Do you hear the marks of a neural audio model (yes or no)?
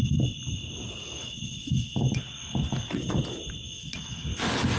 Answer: no